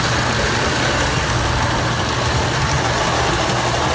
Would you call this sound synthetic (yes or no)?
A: no